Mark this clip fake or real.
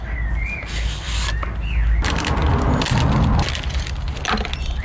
real